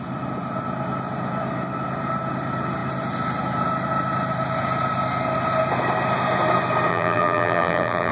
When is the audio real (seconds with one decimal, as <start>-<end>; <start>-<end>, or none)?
0.0-6.9